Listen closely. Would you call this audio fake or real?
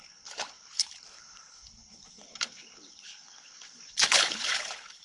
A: fake